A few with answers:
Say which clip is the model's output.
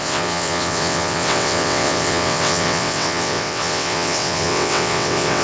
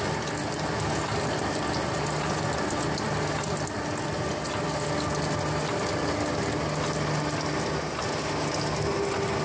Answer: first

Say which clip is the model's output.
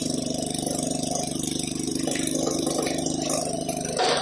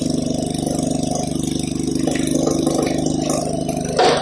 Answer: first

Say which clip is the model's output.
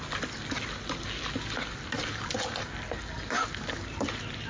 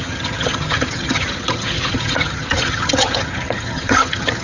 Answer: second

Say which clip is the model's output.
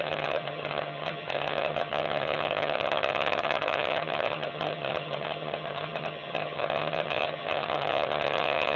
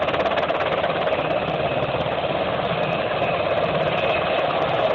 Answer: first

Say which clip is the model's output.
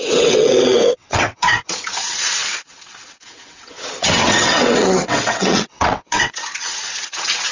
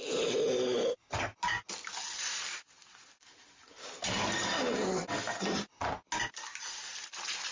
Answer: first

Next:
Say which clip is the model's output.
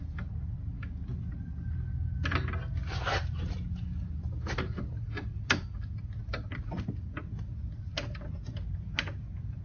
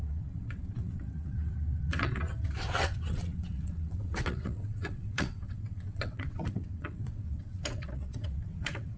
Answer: second